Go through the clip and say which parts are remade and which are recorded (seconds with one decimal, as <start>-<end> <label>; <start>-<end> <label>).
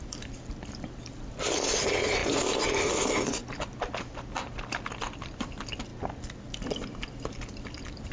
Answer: 0.0-2.2 remade; 2.2-2.9 recorded; 2.9-3.4 remade; 3.4-4.1 recorded; 4.1-5.9 remade; 5.9-7.3 recorded; 7.3-8.1 remade